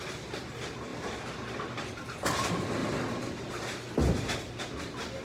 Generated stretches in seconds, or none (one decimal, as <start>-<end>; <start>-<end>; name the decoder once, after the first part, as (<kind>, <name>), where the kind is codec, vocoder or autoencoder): none

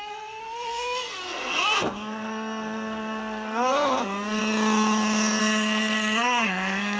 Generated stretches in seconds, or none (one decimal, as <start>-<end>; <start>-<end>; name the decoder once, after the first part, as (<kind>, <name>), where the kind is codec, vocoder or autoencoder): 0.0-4.4 (codec, SNAC); 5.4-7.0

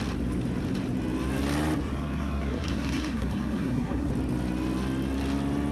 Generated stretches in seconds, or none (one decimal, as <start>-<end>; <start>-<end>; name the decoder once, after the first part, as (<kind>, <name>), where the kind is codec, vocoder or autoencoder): 1.9-4.1 (codec, SNAC)